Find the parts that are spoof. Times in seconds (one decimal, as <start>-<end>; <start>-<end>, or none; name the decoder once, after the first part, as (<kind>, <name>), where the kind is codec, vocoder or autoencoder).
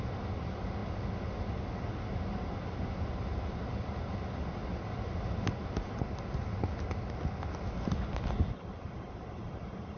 none